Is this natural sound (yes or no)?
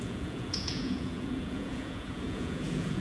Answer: no